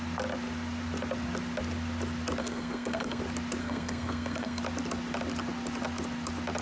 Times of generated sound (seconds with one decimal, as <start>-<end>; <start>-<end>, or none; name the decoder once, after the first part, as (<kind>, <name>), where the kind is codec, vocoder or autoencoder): 2.4-3.2 (codec, SNAC); 3.6-4.6